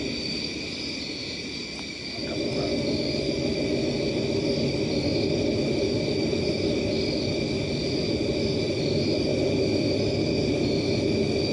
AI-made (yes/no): no